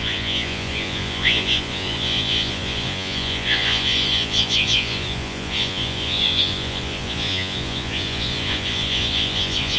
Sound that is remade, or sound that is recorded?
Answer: remade